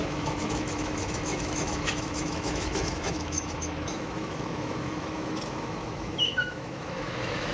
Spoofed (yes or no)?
yes